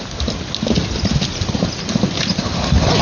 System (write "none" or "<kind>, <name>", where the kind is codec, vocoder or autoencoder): none